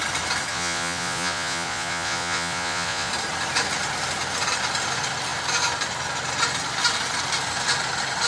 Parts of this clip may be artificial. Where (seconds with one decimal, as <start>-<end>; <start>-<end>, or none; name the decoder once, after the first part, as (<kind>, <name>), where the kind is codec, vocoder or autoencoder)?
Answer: 0.5-3.1 (vocoder, Vocos)